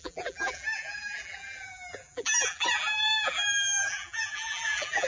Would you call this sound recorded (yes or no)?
no